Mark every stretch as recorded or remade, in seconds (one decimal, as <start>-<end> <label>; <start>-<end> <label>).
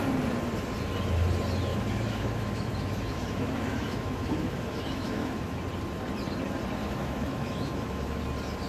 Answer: 0.0-1.7 recorded; 1.7-5.6 remade; 5.6-6.8 recorded; 6.8-8.2 remade; 8.2-8.7 recorded